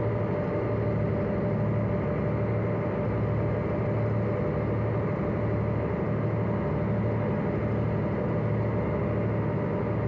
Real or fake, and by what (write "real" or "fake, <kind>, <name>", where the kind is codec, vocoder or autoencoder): real